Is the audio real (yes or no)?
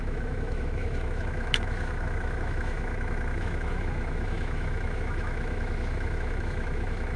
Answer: no